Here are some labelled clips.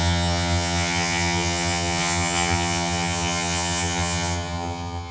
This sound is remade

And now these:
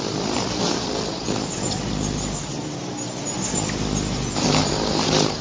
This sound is recorded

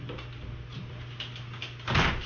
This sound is recorded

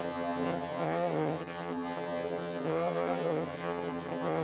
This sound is remade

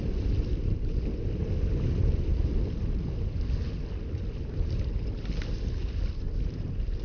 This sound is recorded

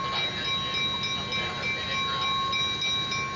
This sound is recorded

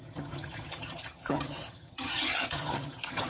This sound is remade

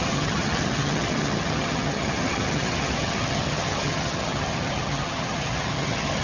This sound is remade